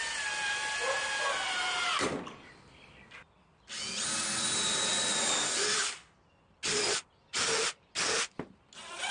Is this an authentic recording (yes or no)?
yes